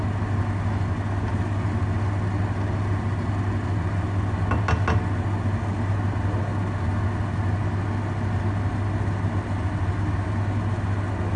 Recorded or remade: recorded